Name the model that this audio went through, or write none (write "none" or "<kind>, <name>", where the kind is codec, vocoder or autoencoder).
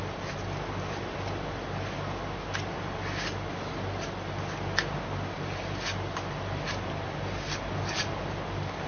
none